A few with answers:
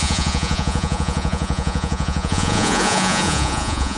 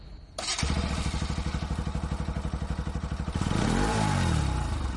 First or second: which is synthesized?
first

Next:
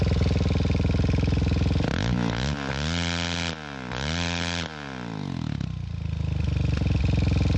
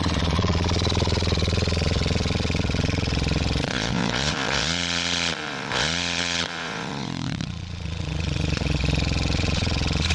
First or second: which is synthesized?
second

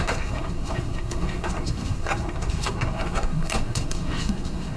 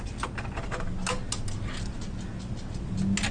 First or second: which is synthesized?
first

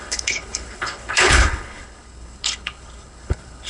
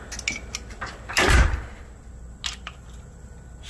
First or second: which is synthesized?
first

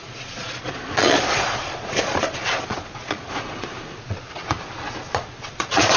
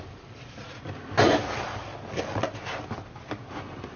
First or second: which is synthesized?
first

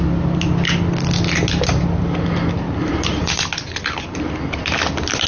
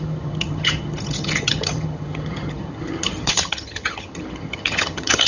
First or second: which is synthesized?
second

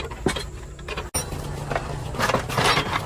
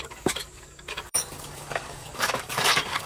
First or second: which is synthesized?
second